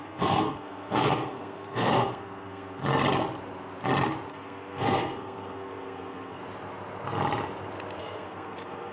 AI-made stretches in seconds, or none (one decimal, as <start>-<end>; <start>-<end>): 0.0-2.8; 4.3-6.4; 8.0-8.9